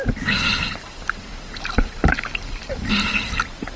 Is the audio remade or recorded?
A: recorded